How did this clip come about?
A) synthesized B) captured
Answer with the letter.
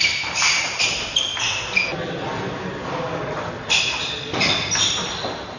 B